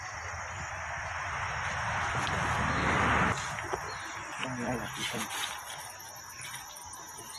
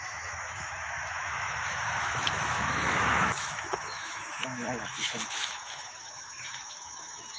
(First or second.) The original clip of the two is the first